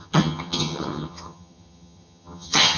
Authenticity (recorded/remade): remade